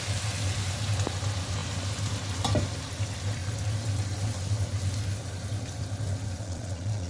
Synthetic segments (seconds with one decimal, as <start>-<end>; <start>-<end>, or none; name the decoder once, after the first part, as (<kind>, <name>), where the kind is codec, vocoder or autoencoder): 6.4-7.1 (vocoder, Vocos)